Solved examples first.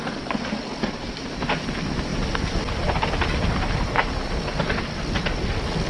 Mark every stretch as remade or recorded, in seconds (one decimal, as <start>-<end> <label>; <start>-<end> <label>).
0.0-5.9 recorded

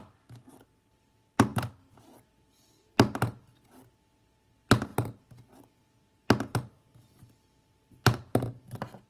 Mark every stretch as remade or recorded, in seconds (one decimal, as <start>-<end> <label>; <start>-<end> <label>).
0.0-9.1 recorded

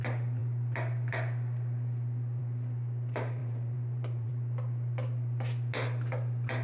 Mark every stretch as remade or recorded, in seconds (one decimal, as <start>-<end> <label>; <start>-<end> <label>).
0.0-3.4 recorded; 3.4-4.3 remade; 4.3-6.6 recorded